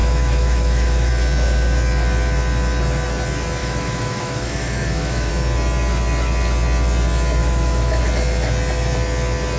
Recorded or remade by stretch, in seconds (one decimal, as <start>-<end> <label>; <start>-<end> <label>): 0.0-1.1 remade; 1.1-3.6 recorded; 3.6-5.3 remade; 5.3-7.4 recorded; 7.4-8.0 remade; 8.0-9.6 recorded